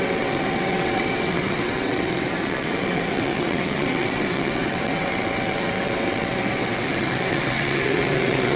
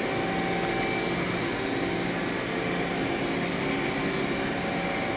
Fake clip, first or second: first